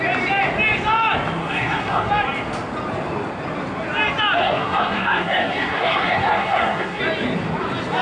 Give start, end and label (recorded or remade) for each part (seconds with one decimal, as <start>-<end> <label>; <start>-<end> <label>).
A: 0.0-1.4 recorded; 1.4-2.1 remade; 2.1-4.4 recorded; 4.4-7.0 remade; 7.0-8.0 recorded